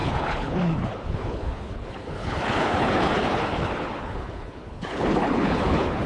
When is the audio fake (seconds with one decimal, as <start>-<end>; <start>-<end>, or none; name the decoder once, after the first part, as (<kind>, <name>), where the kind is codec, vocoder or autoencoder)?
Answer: 0.0-6.1 (codec, HILCodec)